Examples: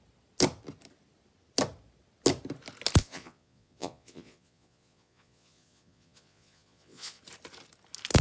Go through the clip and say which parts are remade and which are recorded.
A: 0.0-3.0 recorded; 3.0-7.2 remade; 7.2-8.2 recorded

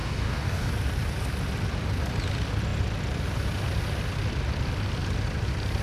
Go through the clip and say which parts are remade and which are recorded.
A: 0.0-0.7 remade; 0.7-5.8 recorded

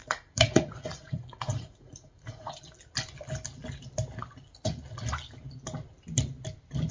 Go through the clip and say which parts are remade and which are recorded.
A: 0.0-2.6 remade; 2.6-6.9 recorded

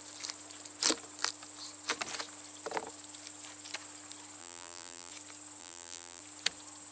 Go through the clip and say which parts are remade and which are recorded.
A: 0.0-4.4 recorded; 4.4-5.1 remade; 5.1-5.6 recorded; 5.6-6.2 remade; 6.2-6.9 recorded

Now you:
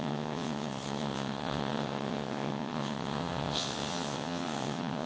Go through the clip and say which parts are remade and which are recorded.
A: 0.0-5.1 remade